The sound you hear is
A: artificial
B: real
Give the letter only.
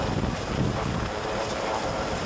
B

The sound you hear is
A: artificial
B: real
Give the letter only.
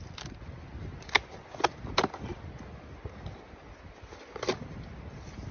B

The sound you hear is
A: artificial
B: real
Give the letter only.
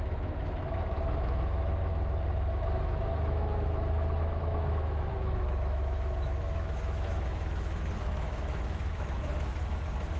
A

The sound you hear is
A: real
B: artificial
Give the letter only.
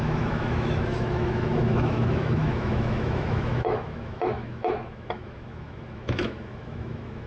B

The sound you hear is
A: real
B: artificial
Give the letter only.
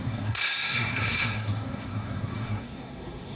B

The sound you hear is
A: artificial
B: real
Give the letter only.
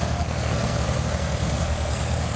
A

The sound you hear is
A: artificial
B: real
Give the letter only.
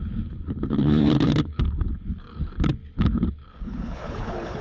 A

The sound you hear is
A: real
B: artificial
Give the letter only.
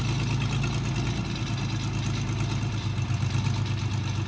A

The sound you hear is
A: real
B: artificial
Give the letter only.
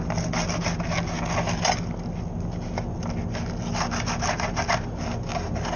A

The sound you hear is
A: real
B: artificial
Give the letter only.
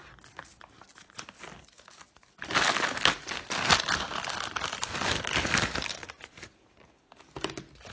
A